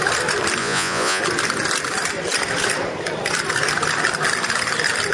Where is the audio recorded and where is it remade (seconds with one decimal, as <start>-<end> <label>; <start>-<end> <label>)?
0.0-0.6 recorded; 0.6-1.2 remade; 1.2-5.1 recorded